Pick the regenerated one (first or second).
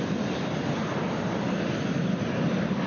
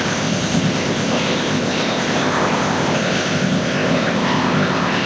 second